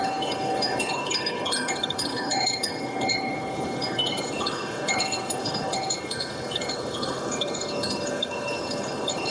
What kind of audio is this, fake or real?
fake